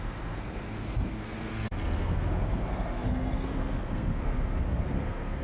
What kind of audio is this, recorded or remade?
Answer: remade